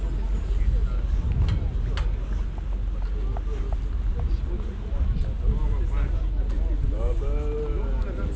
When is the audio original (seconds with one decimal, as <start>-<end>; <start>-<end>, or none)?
0.0-8.4